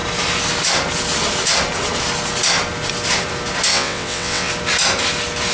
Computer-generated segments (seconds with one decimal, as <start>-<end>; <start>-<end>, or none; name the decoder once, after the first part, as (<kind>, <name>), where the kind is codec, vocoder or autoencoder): 3.7-4.5 (vocoder, WaveNeXt)